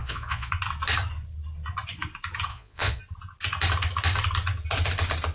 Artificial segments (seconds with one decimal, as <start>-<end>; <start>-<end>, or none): 0.0-0.5; 2.5-3.0

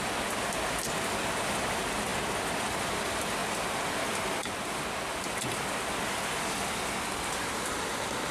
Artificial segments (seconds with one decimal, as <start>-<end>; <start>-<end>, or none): none

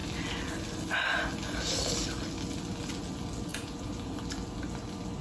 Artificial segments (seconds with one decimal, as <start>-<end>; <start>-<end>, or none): 3.5-4.1

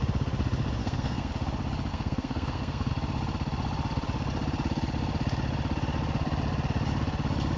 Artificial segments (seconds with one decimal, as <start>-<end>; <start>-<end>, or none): 0.8-1.3; 1.9-2.9

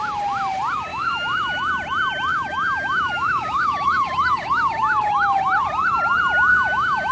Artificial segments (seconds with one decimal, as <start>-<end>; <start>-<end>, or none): 0.9-1.7; 2.3-5.4; 6.5-7.1

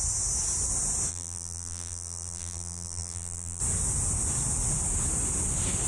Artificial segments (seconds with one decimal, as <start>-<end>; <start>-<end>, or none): 1.1-3.6

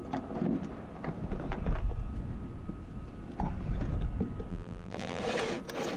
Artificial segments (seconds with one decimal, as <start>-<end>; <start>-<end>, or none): 4.5-5.2

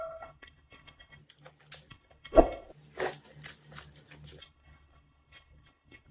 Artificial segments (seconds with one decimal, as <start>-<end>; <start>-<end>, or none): 0.0-1.2; 1.9-2.7; 4.4-6.1